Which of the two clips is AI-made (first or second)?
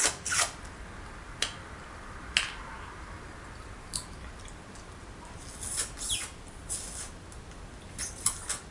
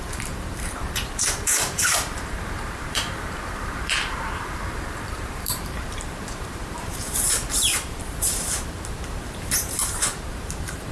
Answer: second